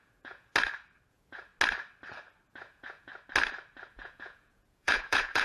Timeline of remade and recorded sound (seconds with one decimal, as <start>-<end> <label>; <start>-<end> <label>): 0.0-0.5 remade; 0.5-1.1 recorded; 1.1-1.5 remade; 1.5-2.5 recorded; 2.5-3.1 remade; 3.1-3.9 recorded; 3.9-5.4 remade